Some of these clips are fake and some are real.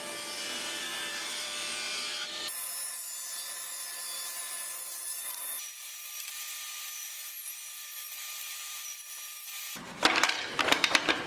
fake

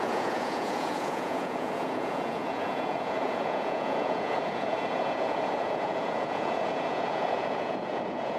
fake